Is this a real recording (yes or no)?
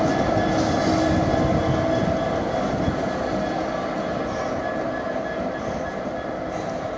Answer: yes